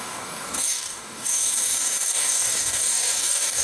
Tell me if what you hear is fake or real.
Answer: fake